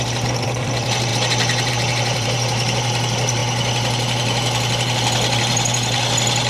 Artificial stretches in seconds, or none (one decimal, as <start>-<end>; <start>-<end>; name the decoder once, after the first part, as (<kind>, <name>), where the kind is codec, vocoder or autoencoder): 0.0-1.1 (vocoder, BigVGAN v2); 1.7-6.5